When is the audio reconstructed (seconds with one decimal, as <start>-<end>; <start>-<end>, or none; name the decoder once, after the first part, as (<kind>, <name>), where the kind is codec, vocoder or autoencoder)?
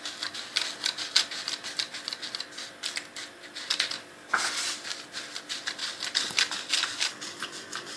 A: none